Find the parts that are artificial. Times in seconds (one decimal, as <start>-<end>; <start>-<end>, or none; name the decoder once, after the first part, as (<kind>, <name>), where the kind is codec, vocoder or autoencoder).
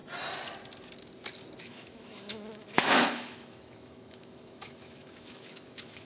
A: 1.6-6.0 (autoencoder, DAC-VAE)